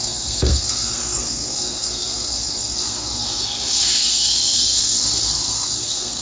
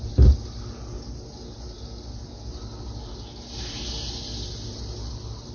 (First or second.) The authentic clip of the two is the second